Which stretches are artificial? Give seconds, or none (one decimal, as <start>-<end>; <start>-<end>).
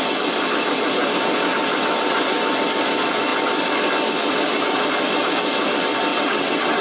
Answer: 6.1-6.8